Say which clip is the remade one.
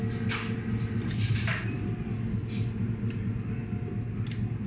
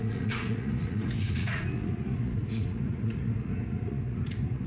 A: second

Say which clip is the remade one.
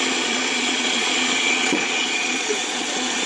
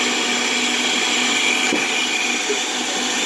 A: first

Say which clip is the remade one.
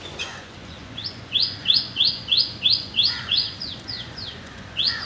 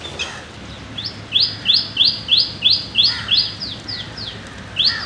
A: first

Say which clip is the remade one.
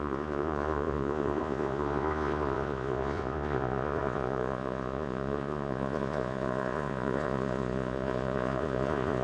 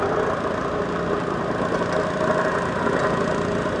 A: first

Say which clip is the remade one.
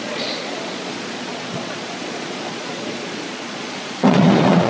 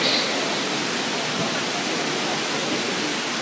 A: first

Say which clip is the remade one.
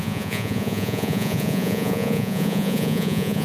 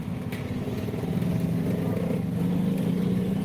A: first